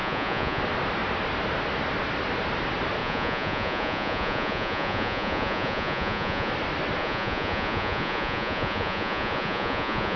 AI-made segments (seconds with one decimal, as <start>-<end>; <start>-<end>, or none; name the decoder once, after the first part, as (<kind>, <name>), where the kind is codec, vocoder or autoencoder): 0.0-0.6 (vocoder, Vocos); 3.0-6.5; 7.0-10.2

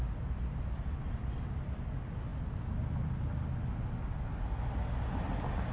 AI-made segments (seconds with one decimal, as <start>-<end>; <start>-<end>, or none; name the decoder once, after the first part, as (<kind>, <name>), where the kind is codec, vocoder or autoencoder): none

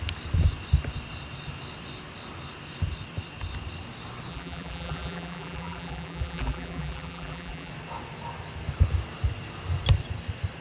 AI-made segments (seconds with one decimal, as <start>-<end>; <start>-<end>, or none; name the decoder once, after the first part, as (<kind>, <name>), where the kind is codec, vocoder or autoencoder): 4.3-7.7 (vocoder, BigVGAN v2)

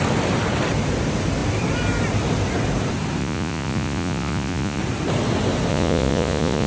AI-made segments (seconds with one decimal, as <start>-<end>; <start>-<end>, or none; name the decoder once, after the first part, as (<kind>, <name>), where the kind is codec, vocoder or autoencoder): 3.2-4.8 (vocoder, Vocos); 5.7-6.7

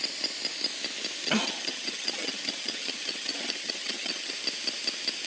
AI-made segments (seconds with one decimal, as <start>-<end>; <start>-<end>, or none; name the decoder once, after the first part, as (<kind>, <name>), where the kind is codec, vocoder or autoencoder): 1.2-4.3 (vocoder, HiFi-GAN)

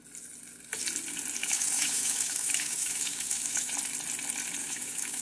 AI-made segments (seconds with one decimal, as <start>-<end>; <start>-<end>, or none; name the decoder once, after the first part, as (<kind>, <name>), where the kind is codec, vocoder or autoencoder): 1.4-3.7 (autoencoder, DAC-VAE); 4.6-5.2

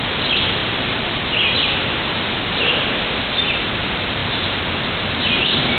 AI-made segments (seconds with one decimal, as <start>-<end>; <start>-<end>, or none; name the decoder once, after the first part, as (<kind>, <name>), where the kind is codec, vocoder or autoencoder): 0.6-1.2 (vocoder, BigVGAN v2)

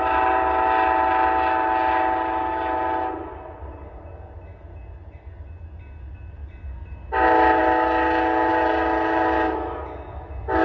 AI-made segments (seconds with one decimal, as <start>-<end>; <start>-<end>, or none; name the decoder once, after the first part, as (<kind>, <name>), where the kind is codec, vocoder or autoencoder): none